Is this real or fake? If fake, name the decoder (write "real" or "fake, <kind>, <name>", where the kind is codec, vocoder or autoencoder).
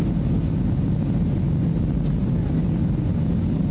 real